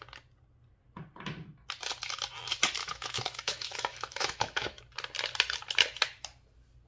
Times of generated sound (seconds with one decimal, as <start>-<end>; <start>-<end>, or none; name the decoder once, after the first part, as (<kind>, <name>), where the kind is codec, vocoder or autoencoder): 2.8-4.8 (autoencoder, DAC-VAE)

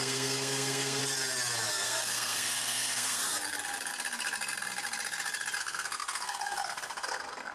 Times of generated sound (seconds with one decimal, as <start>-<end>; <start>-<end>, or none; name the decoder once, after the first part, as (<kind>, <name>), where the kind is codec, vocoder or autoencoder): 0.0-1.0 (codec, SNAC); 1.7-3.2; 5.6-7.5

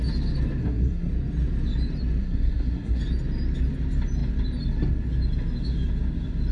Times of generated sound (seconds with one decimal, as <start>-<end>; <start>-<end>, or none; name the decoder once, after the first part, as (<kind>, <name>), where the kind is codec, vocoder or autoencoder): 0.6-1.1 (codec, SNAC); 2.2-3.0

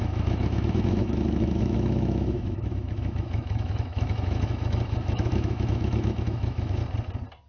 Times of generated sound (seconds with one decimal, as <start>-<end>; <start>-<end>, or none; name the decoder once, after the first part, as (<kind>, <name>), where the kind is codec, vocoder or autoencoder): 0.0-6.8 (autoencoder, DAC-VAE)

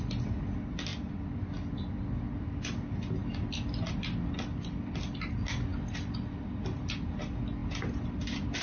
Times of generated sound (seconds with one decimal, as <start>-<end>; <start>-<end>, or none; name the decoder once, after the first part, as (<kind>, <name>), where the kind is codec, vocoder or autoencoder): 5.7-6.6 (vocoder, BigVGAN v2)

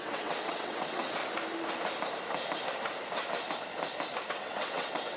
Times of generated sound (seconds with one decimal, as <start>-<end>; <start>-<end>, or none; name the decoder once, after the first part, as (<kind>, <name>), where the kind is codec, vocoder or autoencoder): 0.0-1.2 (vocoder, WaveNeXt); 4.3-5.2

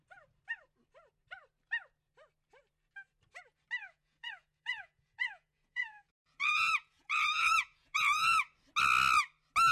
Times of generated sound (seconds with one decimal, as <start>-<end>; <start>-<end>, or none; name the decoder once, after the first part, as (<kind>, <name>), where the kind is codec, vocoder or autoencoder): 3.8-8.4 (vocoder, Vocos)

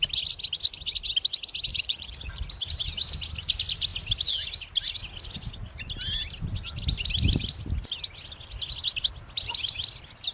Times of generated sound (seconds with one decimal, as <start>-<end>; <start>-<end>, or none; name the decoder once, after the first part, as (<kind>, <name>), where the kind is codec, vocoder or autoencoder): 1.7-2.4 (vocoder, Vocos)